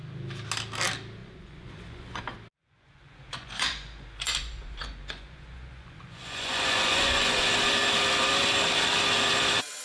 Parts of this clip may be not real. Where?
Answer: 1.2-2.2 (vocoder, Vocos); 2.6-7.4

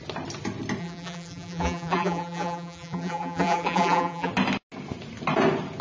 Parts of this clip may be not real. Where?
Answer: 0.8-4.3 (vocoder, BigVGAN v2)

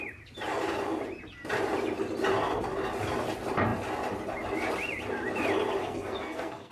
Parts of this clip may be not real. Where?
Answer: 5.8-6.7 (codec, SNAC)

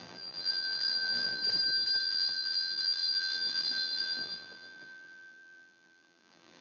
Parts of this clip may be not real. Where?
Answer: 0.0-1.4 (vocoder, BigVGAN v2); 2.0-6.6

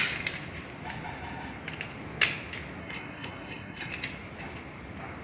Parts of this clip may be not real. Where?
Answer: 2.8-3.9 (codec, SNAC)